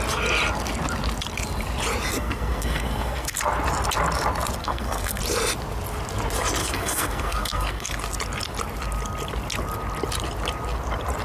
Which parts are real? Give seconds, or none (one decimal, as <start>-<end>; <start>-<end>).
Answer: 0.0-2.1; 3.4-4.6; 5.2-6.6; 7.9-11.2